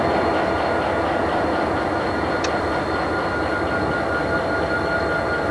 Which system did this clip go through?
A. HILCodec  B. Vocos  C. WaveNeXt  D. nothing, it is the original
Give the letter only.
D